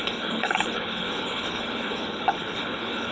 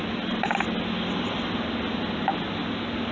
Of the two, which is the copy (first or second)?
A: first